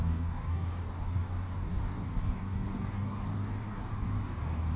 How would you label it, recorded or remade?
remade